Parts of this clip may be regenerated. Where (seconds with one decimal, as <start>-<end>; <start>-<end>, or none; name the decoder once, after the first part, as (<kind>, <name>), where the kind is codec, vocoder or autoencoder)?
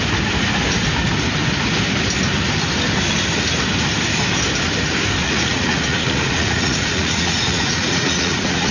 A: 5.2-8.7 (vocoder, Vocos)